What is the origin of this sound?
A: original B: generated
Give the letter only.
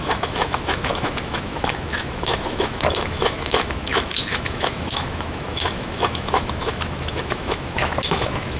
B